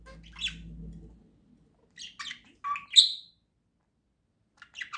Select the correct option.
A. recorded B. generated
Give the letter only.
A